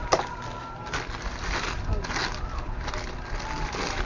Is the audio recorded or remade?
recorded